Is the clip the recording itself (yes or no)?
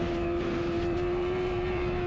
no